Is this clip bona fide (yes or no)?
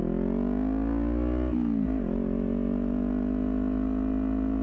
yes